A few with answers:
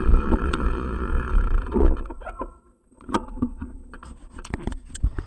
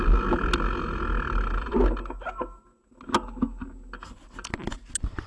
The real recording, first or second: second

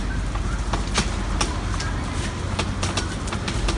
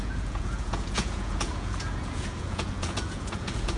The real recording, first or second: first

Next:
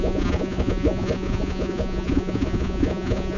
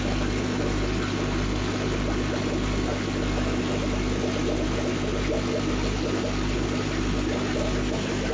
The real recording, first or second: second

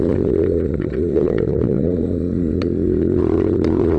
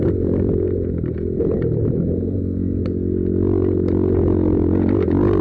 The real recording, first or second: second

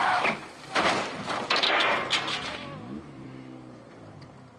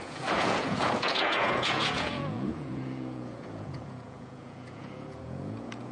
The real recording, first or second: first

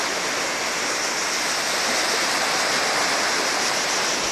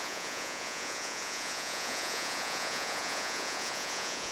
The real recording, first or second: first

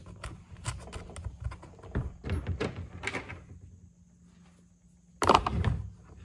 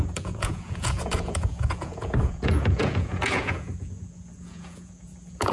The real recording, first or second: first